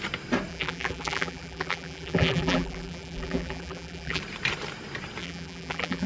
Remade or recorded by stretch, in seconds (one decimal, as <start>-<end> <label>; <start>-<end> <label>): 0.0-0.5 recorded; 0.5-4.2 remade; 4.2-5.2 recorded; 5.2-6.1 remade